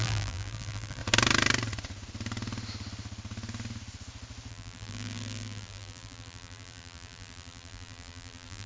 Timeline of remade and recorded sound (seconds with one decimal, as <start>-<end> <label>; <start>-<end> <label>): 0.0-1.0 remade; 1.0-4.5 recorded; 4.5-8.7 remade